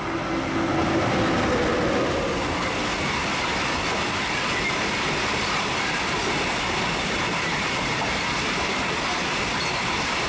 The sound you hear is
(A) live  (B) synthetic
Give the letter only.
A